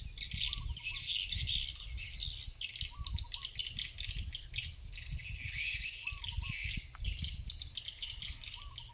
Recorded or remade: recorded